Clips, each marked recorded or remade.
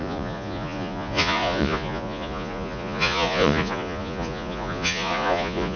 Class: remade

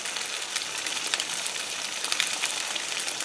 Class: recorded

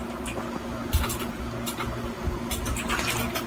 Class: recorded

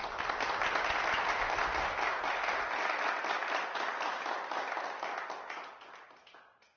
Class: recorded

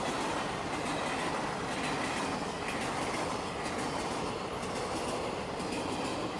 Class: recorded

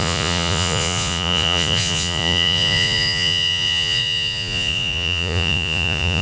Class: remade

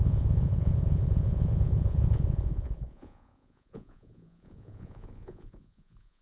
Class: remade